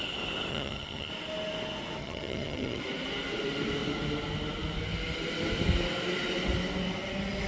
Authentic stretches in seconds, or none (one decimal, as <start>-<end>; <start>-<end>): 0.0-0.5; 1.1-2.0; 2.8-7.5